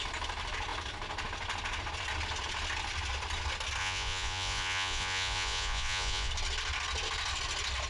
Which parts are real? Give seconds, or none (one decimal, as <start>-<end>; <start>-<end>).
0.0-3.8; 6.3-7.9